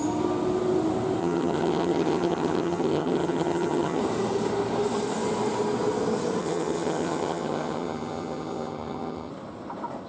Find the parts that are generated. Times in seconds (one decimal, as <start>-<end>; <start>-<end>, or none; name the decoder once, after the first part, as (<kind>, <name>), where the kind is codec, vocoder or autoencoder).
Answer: 1.2-4.0 (vocoder, HiFi-GAN); 6.4-9.3